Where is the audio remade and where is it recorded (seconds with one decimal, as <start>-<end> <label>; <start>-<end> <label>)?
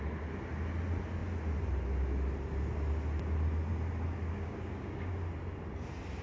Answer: 0.0-4.3 recorded; 4.3-5.1 remade; 5.1-6.2 recorded